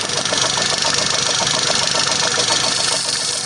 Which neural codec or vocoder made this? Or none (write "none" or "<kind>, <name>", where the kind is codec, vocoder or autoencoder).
none